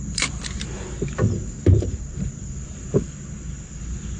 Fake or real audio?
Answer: fake